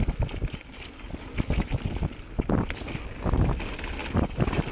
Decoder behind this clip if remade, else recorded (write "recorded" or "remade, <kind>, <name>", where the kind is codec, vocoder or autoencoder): recorded